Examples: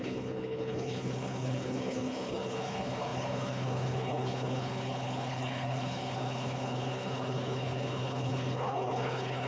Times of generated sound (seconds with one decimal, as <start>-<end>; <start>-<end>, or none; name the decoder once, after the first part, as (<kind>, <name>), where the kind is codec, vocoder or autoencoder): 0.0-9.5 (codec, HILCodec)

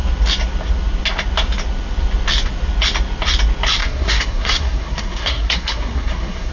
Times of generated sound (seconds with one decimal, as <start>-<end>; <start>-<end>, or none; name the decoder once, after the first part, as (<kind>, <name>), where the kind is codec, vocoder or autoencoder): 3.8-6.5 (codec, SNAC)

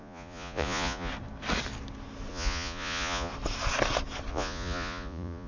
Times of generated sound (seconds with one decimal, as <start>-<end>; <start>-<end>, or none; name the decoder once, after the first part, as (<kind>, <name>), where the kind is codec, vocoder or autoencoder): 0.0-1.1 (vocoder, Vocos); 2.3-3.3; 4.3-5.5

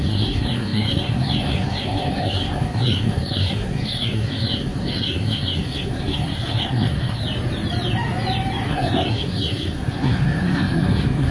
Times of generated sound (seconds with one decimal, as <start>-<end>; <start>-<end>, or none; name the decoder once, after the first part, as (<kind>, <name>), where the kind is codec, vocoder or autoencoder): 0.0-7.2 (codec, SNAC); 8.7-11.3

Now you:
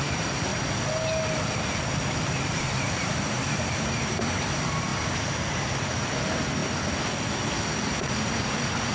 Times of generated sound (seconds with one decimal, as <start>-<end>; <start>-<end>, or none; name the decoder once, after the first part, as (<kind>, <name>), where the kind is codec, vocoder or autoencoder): 0.0-0.5 (vocoder, BigVGAN v2); 2.3-4.9; 5.5-6.6; 7.8-8.9

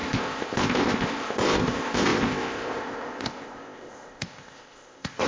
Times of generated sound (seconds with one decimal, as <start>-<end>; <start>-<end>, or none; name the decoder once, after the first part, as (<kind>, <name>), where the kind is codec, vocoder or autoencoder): 0.0-5.3 (codec, ZipCodec)